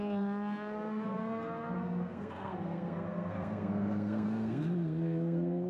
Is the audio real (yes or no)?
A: no